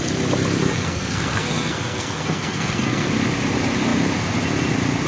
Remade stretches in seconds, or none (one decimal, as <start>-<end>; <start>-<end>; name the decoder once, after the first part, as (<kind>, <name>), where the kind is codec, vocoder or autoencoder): 0.6-3.1 (codec, SNAC)